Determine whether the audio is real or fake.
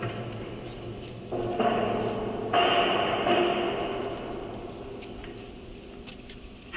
real